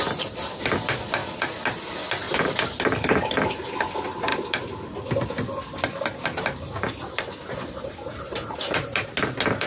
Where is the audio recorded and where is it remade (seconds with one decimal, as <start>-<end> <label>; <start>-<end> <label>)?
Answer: 0.0-9.7 recorded